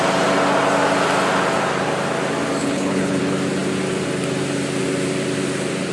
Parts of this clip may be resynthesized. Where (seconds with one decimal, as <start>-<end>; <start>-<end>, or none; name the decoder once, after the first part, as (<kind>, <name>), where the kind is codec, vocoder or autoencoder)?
2.6-3.2 (codec, HILCodec)